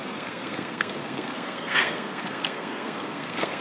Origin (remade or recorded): remade